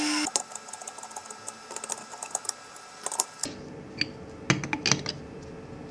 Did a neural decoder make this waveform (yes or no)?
no